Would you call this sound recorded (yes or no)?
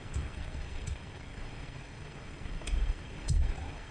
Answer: no